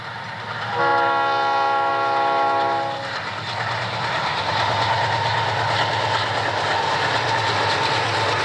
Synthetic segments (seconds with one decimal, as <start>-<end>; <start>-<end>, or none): 0.9-1.9